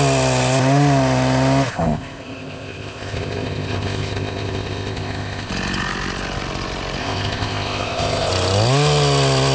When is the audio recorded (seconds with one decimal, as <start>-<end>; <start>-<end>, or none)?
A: 0.0-1.7; 5.5-7.0; 8.3-9.5